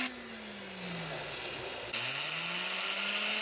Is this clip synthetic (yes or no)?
no